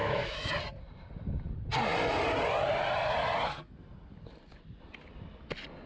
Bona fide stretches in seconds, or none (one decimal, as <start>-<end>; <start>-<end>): 0.5-5.9